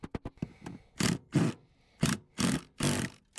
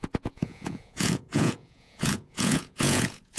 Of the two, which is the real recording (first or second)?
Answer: first